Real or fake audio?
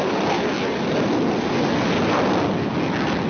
real